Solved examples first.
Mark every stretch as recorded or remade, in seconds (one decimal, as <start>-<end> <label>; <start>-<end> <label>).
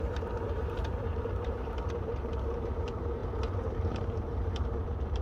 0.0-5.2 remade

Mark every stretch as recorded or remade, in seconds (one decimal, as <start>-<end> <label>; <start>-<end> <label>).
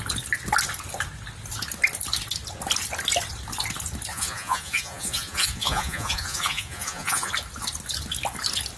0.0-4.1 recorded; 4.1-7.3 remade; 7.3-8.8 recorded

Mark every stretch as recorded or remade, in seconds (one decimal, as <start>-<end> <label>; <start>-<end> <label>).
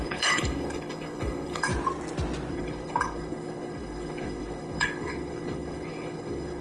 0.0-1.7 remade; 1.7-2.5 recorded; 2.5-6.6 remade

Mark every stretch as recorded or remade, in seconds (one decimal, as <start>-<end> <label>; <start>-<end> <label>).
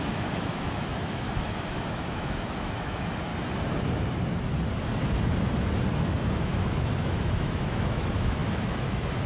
0.0-3.3 remade; 3.3-5.9 recorded; 5.9-9.3 remade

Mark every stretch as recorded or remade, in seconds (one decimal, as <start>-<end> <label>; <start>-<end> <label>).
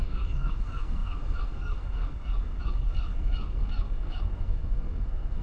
0.0-5.4 remade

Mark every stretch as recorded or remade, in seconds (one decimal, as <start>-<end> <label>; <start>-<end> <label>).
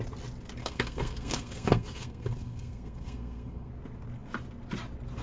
0.0-0.6 recorded; 0.6-3.7 remade; 3.7-5.2 recorded